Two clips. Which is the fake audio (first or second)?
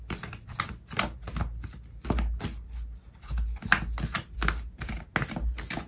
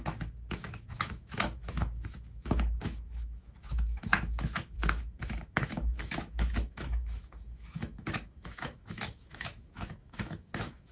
second